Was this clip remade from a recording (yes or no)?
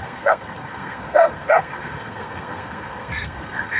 yes